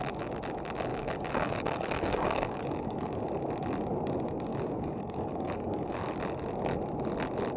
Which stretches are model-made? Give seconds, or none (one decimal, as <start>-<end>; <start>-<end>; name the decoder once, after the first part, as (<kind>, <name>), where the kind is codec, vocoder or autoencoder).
0.9-3.3 (codec, DAC); 4.5-6.2

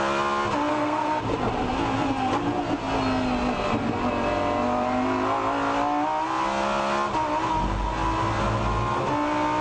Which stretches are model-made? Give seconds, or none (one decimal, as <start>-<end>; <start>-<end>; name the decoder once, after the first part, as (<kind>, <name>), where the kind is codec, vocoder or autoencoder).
0.7-1.2 (codec, SNAC)